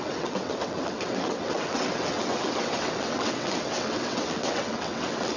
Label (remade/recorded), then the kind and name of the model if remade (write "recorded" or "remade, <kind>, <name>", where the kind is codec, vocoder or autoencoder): remade, vocoder, WaveNeXt